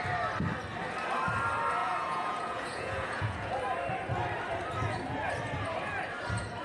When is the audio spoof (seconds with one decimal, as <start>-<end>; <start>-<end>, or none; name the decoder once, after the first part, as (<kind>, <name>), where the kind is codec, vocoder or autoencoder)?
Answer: 1.8-3.5 (vocoder, Vocos)